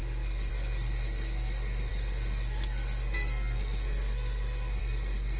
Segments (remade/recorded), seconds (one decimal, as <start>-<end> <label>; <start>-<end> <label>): 0.0-5.4 remade